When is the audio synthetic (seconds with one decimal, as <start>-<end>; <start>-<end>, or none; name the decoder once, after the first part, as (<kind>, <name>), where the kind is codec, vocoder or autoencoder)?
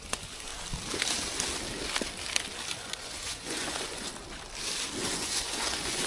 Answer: 0.0-0.5 (vocoder, Vocos); 2.8-4.1; 5.0-6.1